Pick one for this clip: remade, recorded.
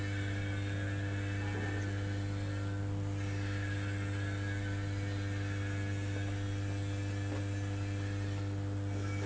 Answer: recorded